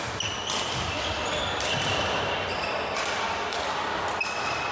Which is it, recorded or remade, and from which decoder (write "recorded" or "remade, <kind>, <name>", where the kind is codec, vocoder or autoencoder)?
recorded